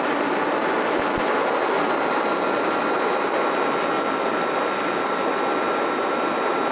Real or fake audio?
real